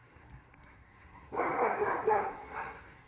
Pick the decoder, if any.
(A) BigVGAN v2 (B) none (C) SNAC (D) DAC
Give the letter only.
C